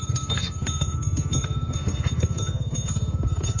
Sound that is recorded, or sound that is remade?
remade